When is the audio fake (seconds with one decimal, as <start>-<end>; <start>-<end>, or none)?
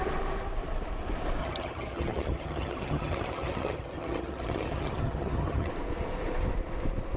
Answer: 1.4-5.7